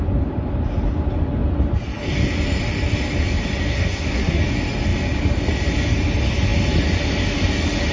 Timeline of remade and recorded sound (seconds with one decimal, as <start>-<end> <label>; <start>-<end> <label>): 0.0-3.7 recorded; 3.7-4.4 remade; 4.4-7.9 recorded